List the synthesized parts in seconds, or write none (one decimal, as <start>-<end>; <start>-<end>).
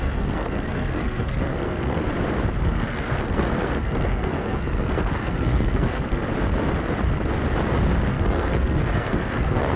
0.0-2.0; 2.6-6.2; 8.1-9.8